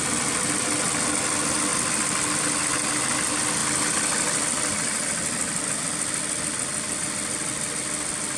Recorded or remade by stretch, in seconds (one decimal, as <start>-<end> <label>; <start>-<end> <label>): 0.0-8.4 recorded

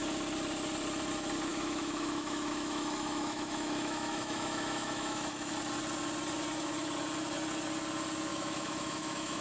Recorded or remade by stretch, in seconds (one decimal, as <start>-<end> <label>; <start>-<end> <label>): 0.0-1.5 recorded; 1.5-5.5 remade; 5.5-8.3 recorded; 8.3-9.4 remade

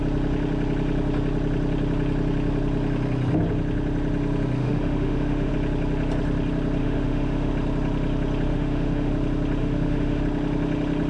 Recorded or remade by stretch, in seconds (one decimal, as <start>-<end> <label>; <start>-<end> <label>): 0.0-4.6 recorded; 4.6-5.5 remade; 5.5-6.8 recorded; 6.8-7.5 remade; 7.5-8.5 recorded; 8.5-9.1 remade; 9.1-9.6 recorded; 9.6-10.2 remade; 10.2-11.1 recorded

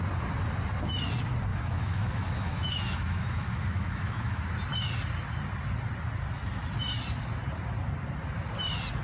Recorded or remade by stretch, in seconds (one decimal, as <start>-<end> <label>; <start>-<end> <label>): 0.0-1.5 recorded; 1.5-4.4 remade; 4.4-9.0 recorded

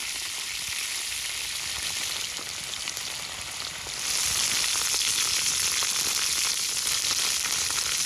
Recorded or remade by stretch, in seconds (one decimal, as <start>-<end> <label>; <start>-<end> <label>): 0.0-8.1 recorded

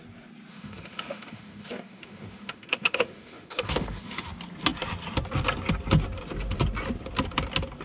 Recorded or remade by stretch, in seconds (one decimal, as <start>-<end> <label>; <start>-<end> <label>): 0.0-0.5 recorded; 0.5-4.3 remade; 4.3-7.8 recorded